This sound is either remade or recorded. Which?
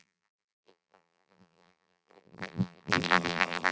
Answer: remade